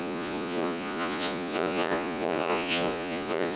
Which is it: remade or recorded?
remade